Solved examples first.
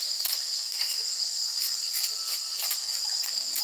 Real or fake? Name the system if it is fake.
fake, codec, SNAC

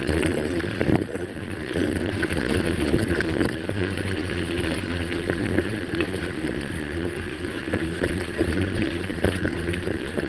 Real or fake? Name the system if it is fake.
fake, vocoder, Vocos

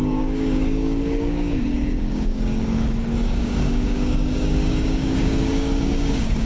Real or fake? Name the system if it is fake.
fake, codec, DAC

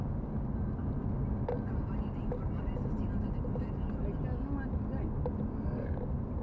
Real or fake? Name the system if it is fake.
real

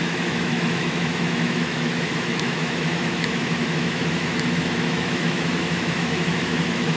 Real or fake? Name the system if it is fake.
fake, autoencoder, DAC-VAE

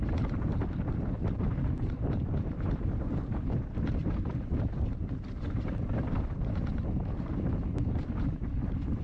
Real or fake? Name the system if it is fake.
fake, vocoder, BigVGAN v2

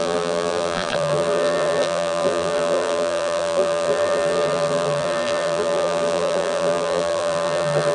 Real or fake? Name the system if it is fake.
fake, vocoder, BigVGAN v2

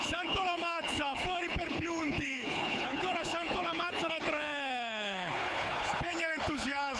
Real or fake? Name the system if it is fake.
fake, codec, HILCodec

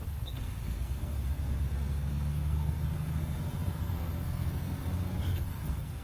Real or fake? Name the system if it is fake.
fake, codec, SNAC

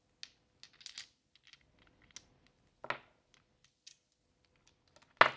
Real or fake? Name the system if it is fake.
real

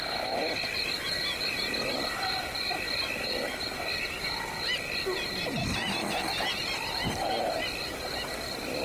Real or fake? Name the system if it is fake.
real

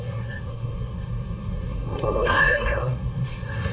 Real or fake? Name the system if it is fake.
fake, codec, SNAC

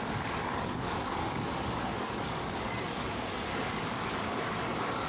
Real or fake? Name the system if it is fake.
fake, codec, DAC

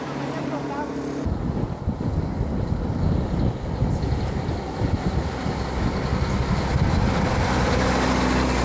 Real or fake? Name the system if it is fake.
real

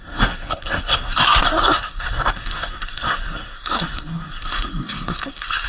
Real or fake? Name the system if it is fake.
fake, codec, SNAC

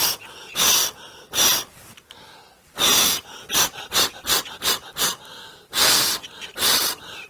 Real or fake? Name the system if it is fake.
real